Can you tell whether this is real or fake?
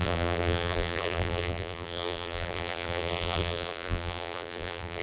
fake